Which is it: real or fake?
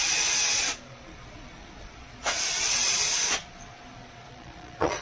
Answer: fake